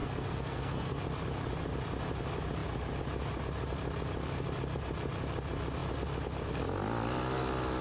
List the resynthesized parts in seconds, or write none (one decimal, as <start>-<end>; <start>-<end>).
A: 0.0-1.0